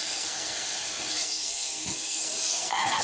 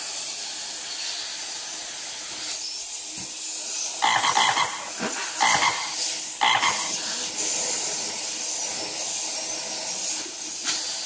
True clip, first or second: second